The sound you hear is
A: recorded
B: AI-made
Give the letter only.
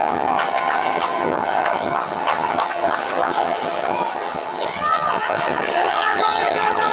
B